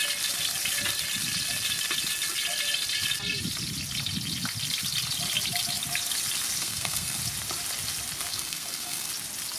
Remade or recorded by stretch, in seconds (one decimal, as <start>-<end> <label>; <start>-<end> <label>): 0.0-6.6 recorded; 6.6-7.2 remade; 7.2-8.3 recorded; 8.3-9.1 remade; 9.1-9.6 recorded